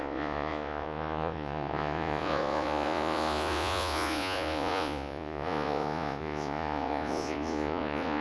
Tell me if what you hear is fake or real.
fake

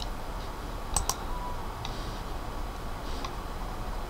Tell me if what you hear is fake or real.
real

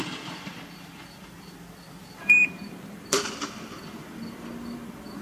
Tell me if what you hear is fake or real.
fake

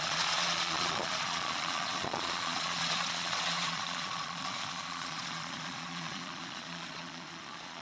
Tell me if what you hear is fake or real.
fake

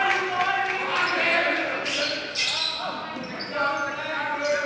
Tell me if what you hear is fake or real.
real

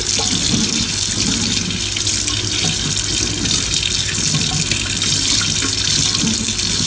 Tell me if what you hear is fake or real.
real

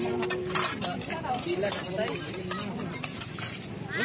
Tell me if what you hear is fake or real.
real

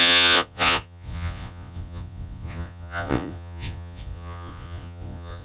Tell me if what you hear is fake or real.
fake